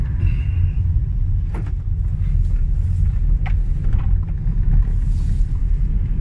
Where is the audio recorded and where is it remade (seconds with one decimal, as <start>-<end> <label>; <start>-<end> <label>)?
0.0-6.2 recorded

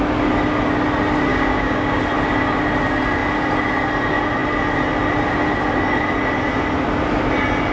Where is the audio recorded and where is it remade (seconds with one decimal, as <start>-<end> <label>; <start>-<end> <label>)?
0.0-1.3 recorded; 1.3-2.0 remade; 2.0-7.7 recorded

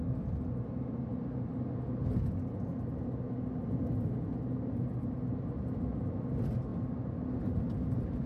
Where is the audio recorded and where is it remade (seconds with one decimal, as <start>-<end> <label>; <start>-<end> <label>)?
0.0-8.3 recorded

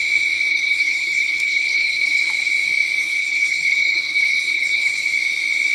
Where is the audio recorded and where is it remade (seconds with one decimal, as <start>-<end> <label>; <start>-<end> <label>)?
0.0-0.5 recorded; 0.5-2.2 remade; 2.2-3.0 recorded; 3.0-5.0 remade; 5.0-5.7 recorded

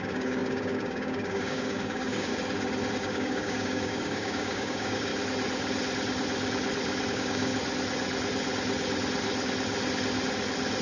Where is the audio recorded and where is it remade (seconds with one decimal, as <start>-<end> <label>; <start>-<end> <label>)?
0.0-2.3 remade; 2.3-3.0 recorded; 3.0-5.1 remade; 5.1-7.1 recorded; 7.1-7.5 remade; 7.5-10.8 recorded

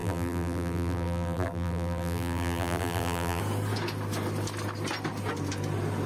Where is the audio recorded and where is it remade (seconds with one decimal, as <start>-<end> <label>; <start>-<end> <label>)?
0.0-3.4 remade; 3.4-6.1 recorded

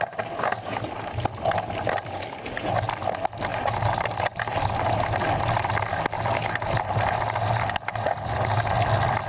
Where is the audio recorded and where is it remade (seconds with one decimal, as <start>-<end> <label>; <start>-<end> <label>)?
0.0-9.3 recorded